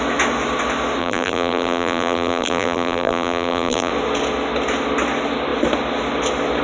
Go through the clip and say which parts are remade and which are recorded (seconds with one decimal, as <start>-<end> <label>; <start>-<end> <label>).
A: 0.0-1.0 recorded; 1.0-3.9 remade; 3.9-6.6 recorded